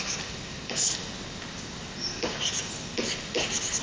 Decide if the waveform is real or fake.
real